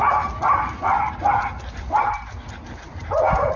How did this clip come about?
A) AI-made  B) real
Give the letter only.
B